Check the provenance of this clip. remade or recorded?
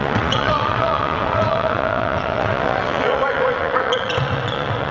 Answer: remade